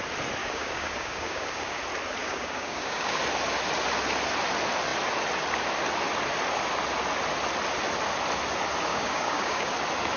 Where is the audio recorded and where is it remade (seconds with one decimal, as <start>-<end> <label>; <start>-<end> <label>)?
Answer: 0.0-0.4 recorded; 0.4-1.8 remade; 1.8-2.2 recorded; 2.2-3.2 remade; 3.2-8.9 recorded; 8.9-9.7 remade; 9.7-10.2 recorded